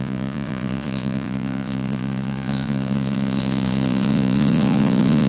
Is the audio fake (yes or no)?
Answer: yes